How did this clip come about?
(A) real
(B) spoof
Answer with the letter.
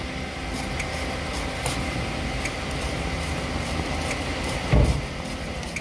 A